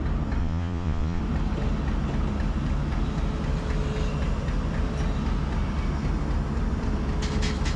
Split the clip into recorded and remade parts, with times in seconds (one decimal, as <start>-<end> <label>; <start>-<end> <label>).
0.0-0.4 recorded; 0.4-1.2 remade; 1.2-7.8 recorded